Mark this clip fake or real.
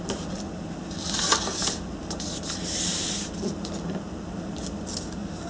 real